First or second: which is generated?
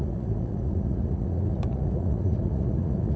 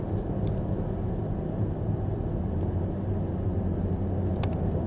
first